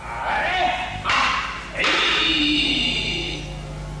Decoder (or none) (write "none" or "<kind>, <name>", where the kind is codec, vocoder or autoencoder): none